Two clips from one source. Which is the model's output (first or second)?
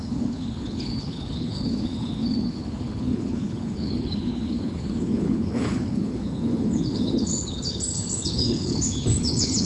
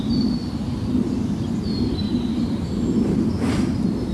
first